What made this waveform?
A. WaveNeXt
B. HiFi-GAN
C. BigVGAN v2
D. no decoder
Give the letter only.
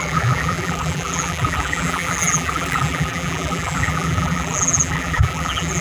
C